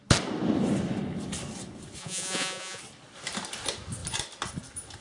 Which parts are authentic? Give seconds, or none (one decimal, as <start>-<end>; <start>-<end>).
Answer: 0.0-2.0; 2.8-5.0

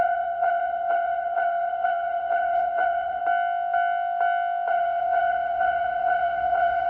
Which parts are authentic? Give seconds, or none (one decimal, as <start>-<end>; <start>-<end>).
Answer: 3.2-4.7

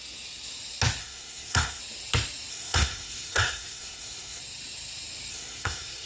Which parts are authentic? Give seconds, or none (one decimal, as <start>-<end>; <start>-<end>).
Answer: 0.0-1.0; 1.8-2.5; 4.4-5.3